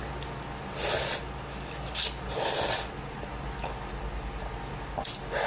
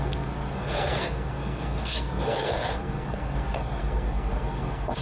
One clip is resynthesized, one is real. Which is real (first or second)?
first